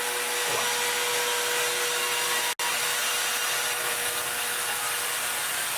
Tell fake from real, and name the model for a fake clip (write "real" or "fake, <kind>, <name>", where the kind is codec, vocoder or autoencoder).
real